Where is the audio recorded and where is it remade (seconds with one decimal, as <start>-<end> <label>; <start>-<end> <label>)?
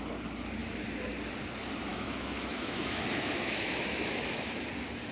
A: 0.0-1.9 recorded; 1.9-4.6 remade; 4.6-5.1 recorded